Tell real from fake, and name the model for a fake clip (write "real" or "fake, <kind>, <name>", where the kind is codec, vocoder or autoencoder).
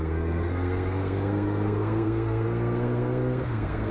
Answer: fake, codec, SNAC